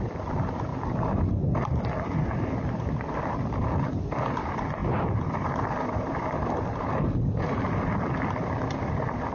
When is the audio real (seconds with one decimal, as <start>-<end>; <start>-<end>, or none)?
0.7-1.6